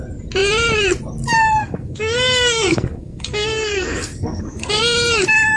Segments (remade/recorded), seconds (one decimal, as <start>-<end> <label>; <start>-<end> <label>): 0.0-1.6 recorded; 1.6-4.8 remade; 4.8-5.6 recorded